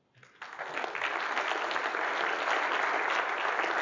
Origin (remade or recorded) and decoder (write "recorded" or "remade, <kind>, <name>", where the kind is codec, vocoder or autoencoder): recorded